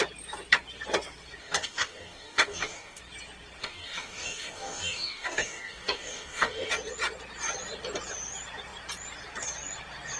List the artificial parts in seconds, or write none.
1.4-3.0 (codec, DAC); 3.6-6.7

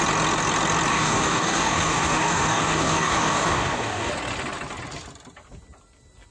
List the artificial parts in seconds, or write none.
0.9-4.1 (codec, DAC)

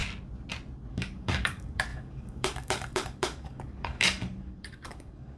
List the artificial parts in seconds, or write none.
0.9-5.4 (codec, DAC)